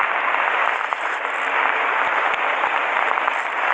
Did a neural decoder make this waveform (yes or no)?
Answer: no